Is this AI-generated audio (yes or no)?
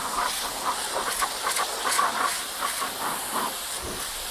no